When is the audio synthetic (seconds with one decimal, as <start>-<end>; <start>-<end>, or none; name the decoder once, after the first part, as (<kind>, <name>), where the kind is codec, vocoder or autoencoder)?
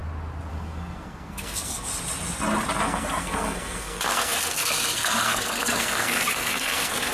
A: 0.5-1.9 (codec, SNAC); 2.8-7.1